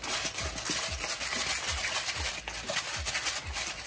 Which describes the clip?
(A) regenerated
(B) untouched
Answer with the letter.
B